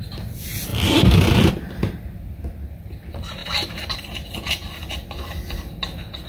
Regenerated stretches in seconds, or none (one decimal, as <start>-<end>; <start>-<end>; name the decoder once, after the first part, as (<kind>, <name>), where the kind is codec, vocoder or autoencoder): none